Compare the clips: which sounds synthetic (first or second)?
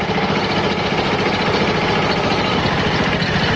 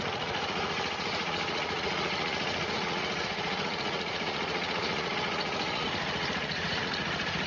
second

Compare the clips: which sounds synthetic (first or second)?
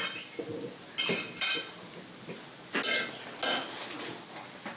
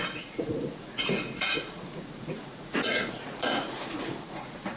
second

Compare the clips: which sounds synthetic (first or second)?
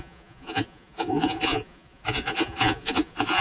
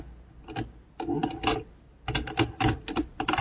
first